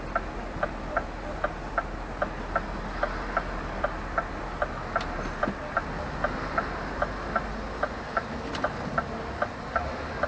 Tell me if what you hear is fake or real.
real